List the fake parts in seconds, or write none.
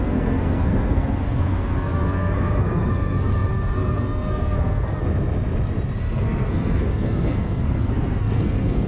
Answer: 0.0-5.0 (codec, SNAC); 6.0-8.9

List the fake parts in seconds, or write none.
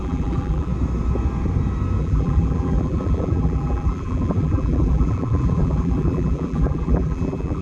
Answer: 0.0-0.7 (vocoder, BigVGAN v2); 2.0-7.6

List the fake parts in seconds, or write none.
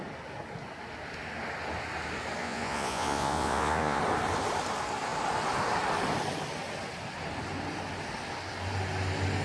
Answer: 2.4-4.0 (vocoder, Vocos)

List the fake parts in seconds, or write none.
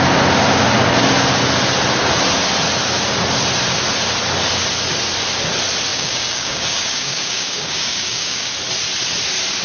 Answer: 5.9-8.5 (codec, DAC)